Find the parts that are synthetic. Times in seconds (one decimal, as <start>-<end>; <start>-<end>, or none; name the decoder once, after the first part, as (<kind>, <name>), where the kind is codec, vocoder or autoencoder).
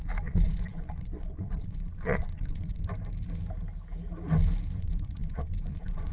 0.0-2.8 (vocoder, Vocos); 4.8-6.1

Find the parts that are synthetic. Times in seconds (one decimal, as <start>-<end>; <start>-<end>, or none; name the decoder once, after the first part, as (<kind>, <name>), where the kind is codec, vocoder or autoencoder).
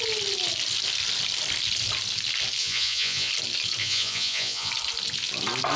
2.6-3.3 (vocoder, Vocos); 3.8-4.7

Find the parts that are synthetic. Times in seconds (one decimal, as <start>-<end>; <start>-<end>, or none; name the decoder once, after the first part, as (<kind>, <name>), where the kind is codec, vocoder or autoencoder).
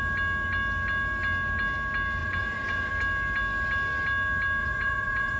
2.2-2.9 (vocoder, Vocos); 4.6-5.4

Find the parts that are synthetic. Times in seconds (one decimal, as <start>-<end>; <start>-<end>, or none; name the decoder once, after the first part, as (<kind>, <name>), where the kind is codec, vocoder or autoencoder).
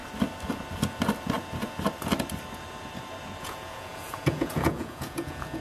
3.4-5.6 (vocoder, Vocos)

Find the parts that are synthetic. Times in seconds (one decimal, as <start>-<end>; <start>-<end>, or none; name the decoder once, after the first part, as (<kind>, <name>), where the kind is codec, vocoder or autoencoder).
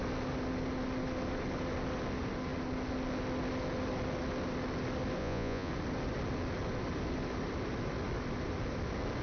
5.2-5.7 (vocoder, Vocos)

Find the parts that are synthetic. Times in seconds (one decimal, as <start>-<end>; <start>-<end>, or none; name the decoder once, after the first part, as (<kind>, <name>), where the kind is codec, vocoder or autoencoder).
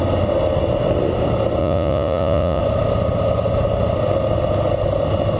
1.6-2.6 (vocoder, Vocos)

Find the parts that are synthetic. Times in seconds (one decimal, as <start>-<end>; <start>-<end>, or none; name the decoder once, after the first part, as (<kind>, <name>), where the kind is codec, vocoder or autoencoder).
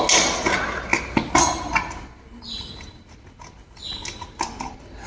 none